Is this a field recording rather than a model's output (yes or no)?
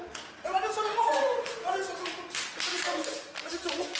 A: yes